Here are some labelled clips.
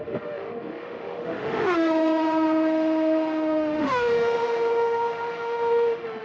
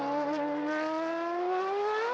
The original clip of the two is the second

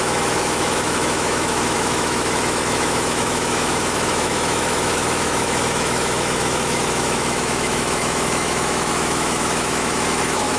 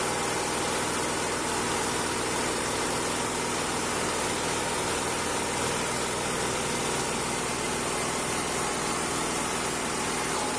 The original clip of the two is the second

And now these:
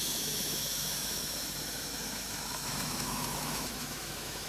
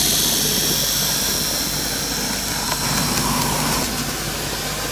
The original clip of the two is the second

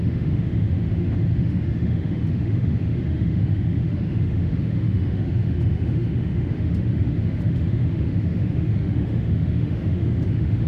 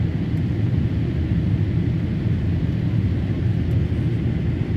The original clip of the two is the second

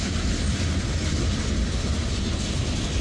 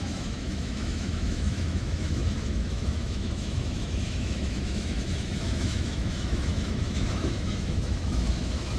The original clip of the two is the first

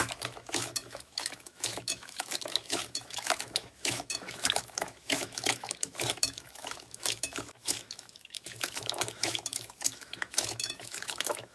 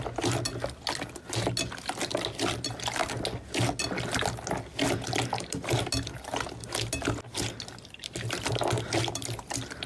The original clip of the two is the second